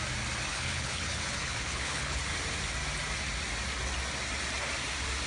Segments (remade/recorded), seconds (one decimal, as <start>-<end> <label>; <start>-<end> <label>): 0.0-0.5 recorded; 0.5-2.2 remade; 2.2-5.3 recorded